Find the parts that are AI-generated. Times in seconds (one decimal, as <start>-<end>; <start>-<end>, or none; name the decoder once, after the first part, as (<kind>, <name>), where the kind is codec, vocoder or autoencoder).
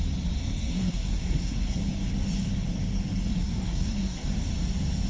0.4-1.8 (codec, SNAC); 3.3-4.4